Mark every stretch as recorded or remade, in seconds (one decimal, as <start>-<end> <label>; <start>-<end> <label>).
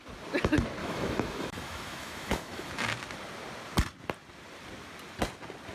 0.0-0.8 recorded; 0.8-2.7 remade; 2.7-5.7 recorded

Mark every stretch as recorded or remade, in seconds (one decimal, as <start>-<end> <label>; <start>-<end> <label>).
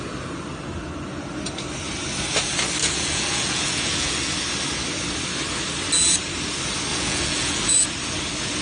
0.0-2.8 recorded; 2.8-4.1 remade; 4.1-6.9 recorded; 6.9-7.8 remade; 7.8-8.6 recorded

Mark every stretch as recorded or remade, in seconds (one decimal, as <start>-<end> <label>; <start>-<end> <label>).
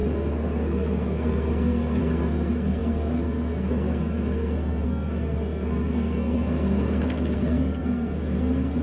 0.0-8.8 remade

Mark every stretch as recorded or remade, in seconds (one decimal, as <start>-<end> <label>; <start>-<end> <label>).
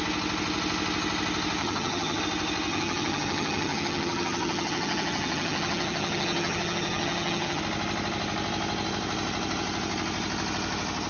0.0-1.6 recorded; 1.6-2.2 remade; 2.2-2.7 recorded; 2.7-7.6 remade; 7.6-11.1 recorded